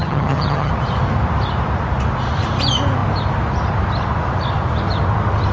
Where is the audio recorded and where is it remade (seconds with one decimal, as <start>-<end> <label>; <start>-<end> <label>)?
0.0-0.7 remade; 0.7-5.5 recorded